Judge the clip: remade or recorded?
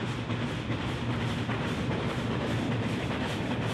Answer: recorded